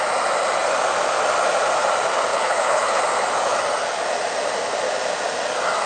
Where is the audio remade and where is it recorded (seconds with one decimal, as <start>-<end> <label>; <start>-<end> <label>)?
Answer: 0.0-2.3 recorded; 2.3-3.0 remade; 3.0-5.9 recorded